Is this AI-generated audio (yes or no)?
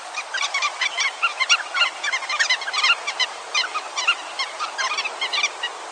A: no